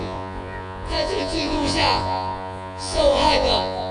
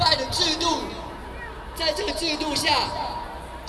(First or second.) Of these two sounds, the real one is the second